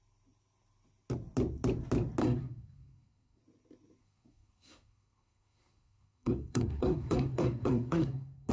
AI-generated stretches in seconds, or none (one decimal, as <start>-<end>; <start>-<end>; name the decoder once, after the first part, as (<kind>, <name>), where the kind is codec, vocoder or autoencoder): 2.2-3.4 (codec, SNAC); 4.0-8.5